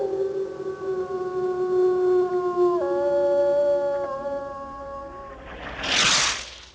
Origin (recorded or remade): recorded